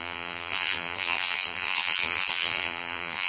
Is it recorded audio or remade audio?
remade